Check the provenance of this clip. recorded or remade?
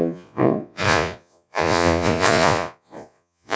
remade